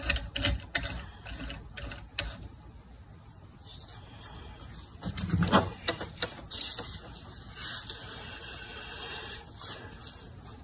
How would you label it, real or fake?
real